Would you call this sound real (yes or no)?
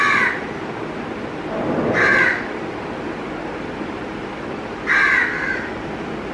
yes